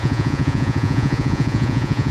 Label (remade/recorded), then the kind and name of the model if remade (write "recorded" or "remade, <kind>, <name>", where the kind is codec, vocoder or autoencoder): remade, vocoder, Vocos